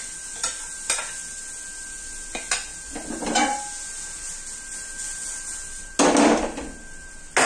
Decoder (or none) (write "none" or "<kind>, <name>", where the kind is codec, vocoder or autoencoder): none